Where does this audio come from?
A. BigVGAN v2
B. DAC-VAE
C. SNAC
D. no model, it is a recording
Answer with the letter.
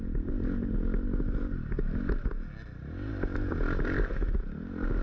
D